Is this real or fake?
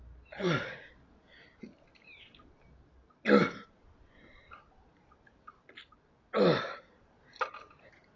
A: real